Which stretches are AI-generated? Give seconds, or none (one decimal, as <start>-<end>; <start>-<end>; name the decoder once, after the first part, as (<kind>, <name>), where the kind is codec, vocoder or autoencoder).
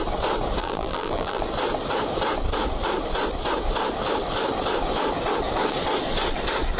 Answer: 0.6-1.4 (vocoder, BigVGAN v2)